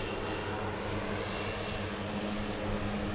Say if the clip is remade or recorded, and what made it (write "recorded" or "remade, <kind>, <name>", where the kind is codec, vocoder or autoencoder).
recorded